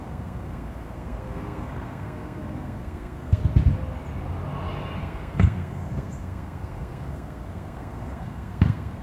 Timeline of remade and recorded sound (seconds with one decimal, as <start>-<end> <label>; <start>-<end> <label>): 0.0-3.4 remade; 3.4-5.0 recorded; 5.0-9.0 remade